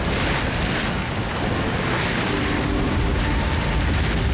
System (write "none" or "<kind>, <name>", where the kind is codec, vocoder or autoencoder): none